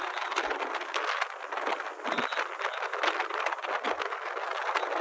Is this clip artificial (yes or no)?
no